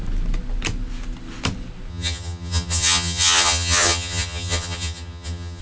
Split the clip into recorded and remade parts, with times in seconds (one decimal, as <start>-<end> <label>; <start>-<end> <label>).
0.0-1.9 recorded; 1.9-5.6 remade